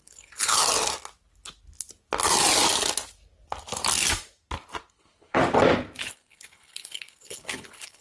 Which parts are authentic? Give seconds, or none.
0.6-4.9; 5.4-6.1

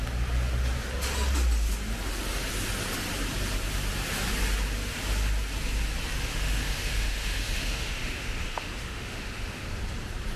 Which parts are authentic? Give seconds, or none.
0.0-6.3; 9.8-10.4

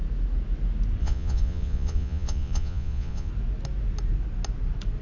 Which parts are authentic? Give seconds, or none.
0.0-1.0; 3.3-5.0

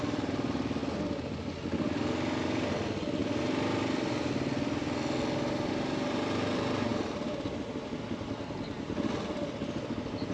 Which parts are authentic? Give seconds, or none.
0.0-10.3

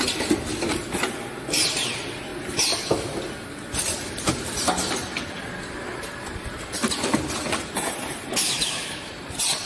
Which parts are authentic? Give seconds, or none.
0.0-8.4; 9.1-9.7